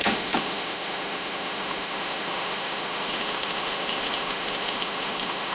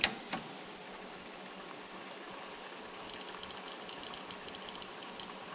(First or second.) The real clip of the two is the second